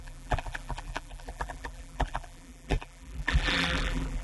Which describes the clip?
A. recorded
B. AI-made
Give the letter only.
B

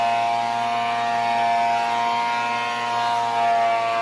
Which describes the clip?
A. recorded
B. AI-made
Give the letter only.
A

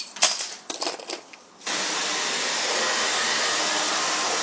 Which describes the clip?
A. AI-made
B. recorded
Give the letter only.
A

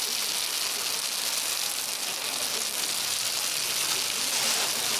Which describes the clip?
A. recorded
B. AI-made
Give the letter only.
A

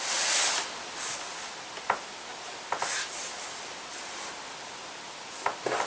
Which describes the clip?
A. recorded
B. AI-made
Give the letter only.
A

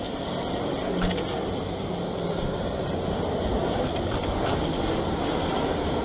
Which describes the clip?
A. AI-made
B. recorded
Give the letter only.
B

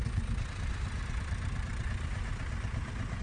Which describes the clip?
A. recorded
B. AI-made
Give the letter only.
B